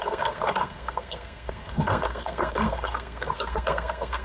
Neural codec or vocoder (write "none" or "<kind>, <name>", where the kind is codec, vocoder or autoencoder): codec, SNAC